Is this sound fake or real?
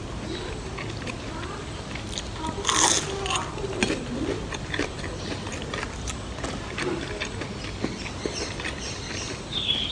real